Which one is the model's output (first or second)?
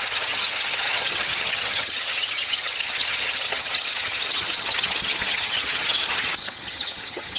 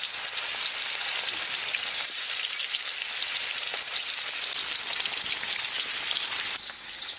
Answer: first